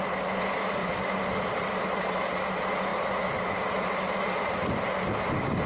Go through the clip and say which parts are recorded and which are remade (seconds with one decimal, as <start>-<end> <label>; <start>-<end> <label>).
0.0-0.8 recorded; 0.8-1.8 remade; 1.8-5.7 recorded